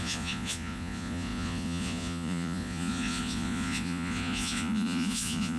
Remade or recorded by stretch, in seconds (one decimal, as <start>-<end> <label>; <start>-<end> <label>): 0.0-5.6 remade